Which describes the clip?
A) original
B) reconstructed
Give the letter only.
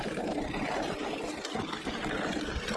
B